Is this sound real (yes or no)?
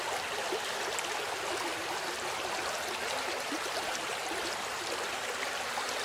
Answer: yes